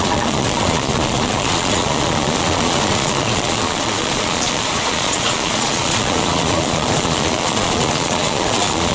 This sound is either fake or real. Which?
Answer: fake